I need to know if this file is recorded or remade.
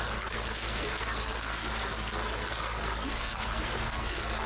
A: remade